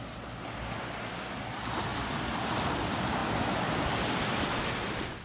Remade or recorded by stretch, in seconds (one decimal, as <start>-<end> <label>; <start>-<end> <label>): 0.0-5.2 recorded